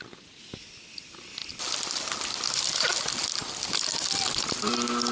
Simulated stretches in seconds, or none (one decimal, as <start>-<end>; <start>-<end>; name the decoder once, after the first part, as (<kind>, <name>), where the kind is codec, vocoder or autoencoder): none

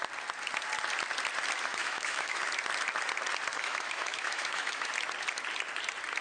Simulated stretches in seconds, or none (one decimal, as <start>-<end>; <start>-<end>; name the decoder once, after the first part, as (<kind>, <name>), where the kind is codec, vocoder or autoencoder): 1.7-2.4 (autoencoder, DAC-VAE); 3.5-4.9

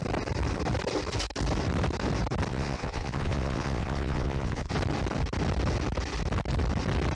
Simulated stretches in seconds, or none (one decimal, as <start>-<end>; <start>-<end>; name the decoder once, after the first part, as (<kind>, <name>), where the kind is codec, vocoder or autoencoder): 2.5-4.7 (vocoder, WaveNeXt)

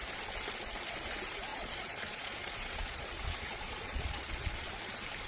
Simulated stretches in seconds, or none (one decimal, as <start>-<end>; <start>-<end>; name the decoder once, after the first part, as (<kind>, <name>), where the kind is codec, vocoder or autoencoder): 1.5-4.7 (vocoder, Vocos)

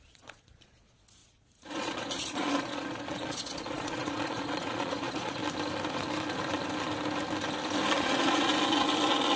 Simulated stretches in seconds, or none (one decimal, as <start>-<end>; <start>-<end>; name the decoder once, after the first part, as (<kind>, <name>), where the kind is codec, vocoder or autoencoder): 0.0-5.4 (vocoder, Vocos); 8.0-8.5

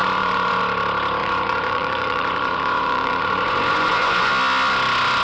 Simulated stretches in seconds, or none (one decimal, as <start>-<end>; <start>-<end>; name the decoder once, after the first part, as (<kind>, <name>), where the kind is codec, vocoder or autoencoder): 0.0-0.6 (vocoder, Vocos); 1.2-4.3